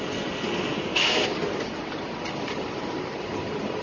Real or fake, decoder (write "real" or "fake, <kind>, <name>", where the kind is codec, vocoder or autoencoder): real